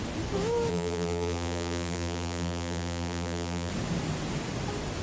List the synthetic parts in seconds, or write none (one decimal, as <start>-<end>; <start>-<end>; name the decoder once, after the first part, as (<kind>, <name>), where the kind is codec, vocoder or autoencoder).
0.7-3.7 (vocoder, BigVGAN v2)